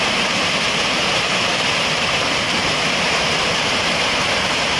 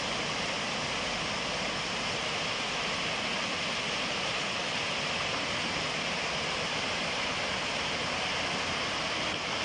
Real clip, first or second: second